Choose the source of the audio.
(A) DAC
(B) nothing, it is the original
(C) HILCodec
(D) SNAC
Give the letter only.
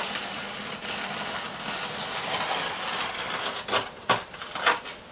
B